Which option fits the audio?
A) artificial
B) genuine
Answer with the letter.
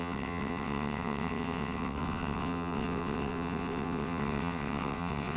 A